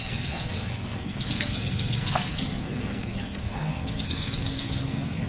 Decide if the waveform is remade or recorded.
remade